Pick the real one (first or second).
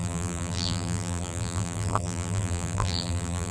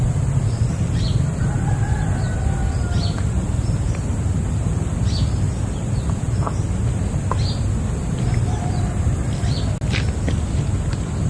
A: second